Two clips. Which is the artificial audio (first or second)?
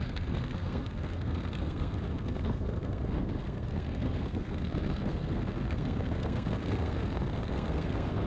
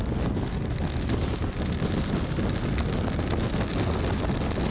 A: first